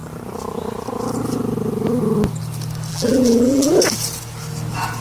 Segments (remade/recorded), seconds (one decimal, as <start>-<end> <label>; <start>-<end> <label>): 0.0-2.9 recorded; 2.9-3.7 remade; 3.7-5.0 recorded